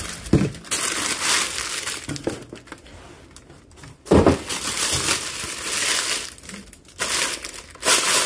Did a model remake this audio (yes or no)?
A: no